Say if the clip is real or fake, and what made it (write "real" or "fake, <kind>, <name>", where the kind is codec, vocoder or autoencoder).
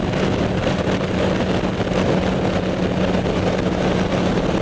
real